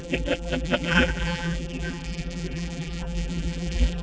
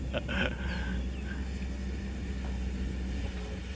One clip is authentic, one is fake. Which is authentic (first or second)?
second